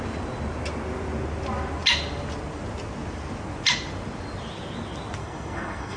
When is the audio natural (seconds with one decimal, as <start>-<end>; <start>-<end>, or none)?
0.0-5.2